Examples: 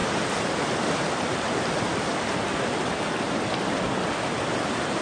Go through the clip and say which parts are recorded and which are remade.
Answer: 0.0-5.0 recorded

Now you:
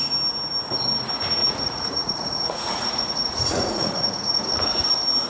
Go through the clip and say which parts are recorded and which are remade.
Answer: 0.0-1.4 recorded; 1.4-4.6 remade; 4.6-5.3 recorded